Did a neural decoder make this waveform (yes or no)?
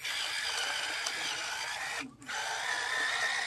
no